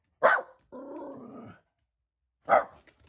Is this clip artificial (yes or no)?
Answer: no